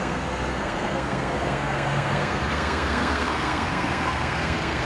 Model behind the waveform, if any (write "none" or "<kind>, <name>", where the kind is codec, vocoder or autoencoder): codec, SNAC